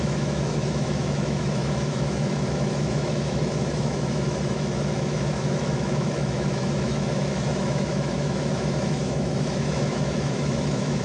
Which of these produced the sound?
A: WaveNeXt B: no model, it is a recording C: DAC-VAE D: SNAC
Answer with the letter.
C